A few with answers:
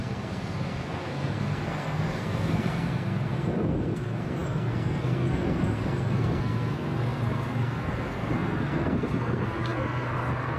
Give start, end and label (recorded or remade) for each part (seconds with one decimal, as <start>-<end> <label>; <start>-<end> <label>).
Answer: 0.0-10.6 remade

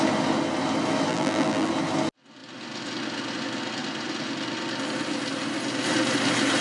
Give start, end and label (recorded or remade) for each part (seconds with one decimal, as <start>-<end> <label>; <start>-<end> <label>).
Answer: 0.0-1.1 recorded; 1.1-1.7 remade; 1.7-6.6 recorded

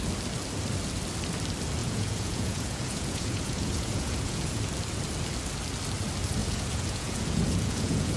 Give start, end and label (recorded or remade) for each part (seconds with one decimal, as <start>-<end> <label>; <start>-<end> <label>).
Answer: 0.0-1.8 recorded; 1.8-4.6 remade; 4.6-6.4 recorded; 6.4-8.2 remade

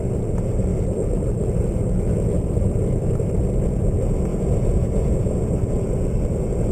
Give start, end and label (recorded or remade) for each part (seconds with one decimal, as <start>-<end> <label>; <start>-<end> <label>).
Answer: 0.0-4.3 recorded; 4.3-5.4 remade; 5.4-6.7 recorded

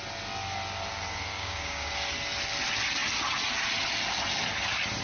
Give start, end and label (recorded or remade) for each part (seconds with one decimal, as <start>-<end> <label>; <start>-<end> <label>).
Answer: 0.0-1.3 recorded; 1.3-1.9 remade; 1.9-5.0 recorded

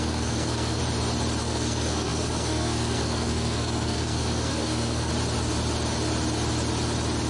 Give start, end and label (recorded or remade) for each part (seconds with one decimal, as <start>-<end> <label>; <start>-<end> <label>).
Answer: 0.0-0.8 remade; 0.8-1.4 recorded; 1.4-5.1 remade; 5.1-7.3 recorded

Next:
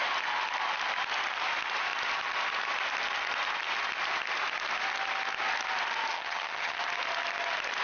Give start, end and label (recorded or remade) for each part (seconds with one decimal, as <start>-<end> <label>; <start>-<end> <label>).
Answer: 0.0-6.1 recorded; 6.1-6.8 remade; 6.8-7.8 recorded